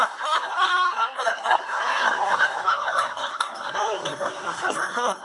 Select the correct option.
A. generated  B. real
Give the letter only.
A